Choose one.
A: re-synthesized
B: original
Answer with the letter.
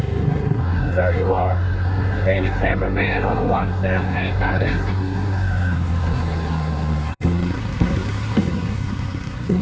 A